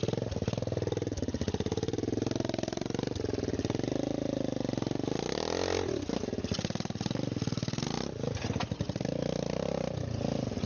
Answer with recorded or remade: recorded